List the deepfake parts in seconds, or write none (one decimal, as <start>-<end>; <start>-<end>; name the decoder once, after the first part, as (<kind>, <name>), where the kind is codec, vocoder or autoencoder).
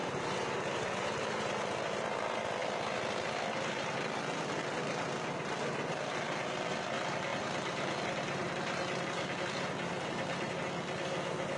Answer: 0.0-1.6 (vocoder, BigVGAN v2); 7.3-10.5